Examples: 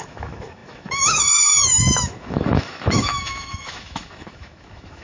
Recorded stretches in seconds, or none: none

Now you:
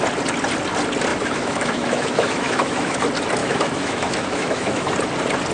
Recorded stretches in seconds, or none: 0.0-1.1; 3.0-3.4; 4.9-5.5

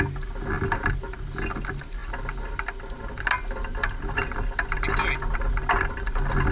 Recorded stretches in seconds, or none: 0.0-6.5

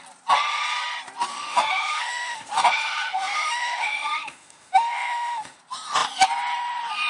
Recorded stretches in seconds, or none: 0.0-1.3; 5.6-7.1